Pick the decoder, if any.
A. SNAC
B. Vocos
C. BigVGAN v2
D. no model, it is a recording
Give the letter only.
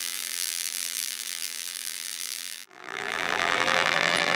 C